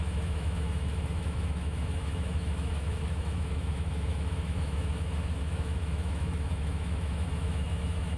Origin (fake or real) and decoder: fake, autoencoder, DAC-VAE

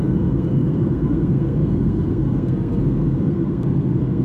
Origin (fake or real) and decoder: fake, codec, SNAC